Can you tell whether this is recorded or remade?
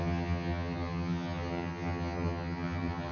remade